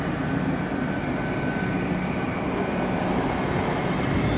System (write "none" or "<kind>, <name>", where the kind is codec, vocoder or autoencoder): none